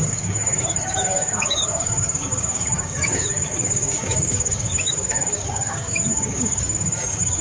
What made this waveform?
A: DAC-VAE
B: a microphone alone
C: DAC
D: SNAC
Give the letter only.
C